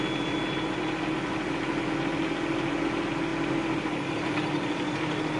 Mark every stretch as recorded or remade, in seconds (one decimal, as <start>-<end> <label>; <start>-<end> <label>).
0.0-5.4 recorded